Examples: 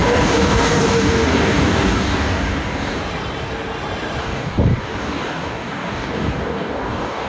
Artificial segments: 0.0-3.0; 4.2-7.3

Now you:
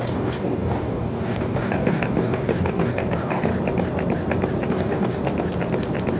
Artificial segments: 0.0-3.5; 4.7-5.2

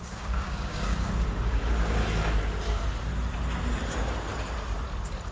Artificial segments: 0.0-2.0

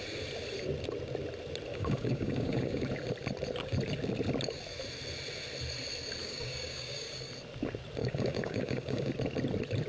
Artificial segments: 1.7-2.9; 6.2-7.3; 8.0-9.1